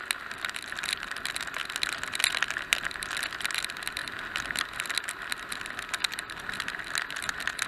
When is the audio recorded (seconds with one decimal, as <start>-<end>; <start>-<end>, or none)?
0.0-7.7